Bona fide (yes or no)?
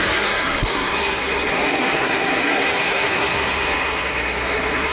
no